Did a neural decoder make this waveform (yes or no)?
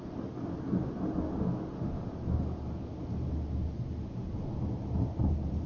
no